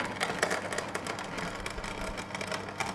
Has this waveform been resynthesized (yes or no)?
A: no